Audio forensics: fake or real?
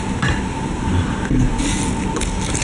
real